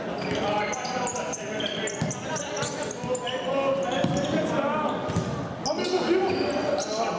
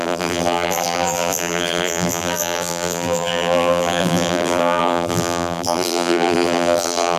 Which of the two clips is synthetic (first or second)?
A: second